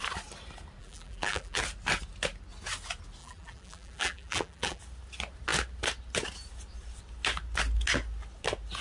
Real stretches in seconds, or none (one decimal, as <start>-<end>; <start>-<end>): 0.0-0.8; 1.6-3.2; 4.8-8.8